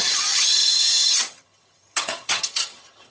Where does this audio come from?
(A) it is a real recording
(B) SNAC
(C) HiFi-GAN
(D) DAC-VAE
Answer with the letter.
C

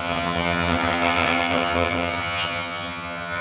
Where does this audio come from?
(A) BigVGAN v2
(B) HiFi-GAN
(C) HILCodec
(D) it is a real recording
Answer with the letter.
B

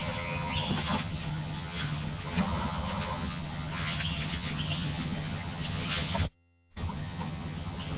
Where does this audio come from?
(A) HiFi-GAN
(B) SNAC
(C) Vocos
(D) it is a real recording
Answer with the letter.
A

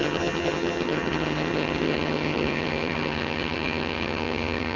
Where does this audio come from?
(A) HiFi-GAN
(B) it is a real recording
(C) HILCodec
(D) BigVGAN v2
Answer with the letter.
A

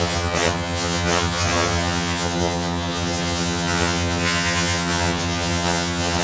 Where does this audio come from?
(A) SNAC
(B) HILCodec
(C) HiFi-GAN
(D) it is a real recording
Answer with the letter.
C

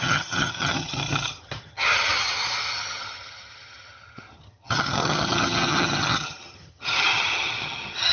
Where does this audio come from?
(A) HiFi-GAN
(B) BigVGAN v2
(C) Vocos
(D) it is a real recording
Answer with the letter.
A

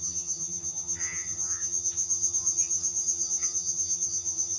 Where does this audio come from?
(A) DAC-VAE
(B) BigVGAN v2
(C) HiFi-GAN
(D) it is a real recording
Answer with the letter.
C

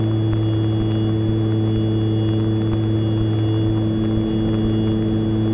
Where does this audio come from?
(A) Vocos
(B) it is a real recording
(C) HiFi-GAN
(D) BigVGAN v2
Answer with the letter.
B